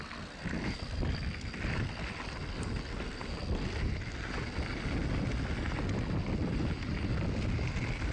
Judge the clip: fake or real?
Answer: real